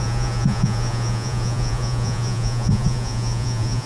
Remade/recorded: remade